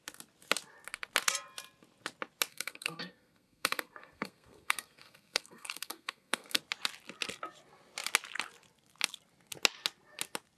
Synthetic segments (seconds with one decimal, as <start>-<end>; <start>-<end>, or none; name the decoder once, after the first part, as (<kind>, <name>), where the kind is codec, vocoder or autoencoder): 2.5-6.6 (codec, SNAC)